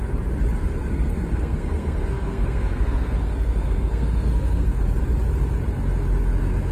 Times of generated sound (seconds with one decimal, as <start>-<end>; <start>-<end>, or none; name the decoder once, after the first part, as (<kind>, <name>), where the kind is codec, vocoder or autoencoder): 0.8-4.8 (codec, SNAC)